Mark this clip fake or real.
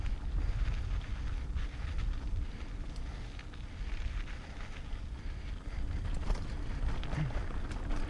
real